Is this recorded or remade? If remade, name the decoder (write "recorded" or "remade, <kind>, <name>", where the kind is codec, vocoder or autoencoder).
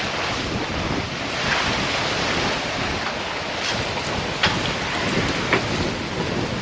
recorded